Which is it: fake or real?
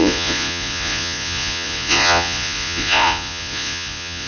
fake